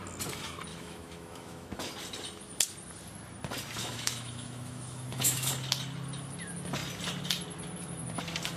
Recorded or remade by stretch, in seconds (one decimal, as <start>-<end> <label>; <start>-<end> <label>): 0.0-0.7 recorded; 0.7-1.9 remade; 1.9-3.8 recorded; 3.8-5.5 remade; 5.5-8.6 recorded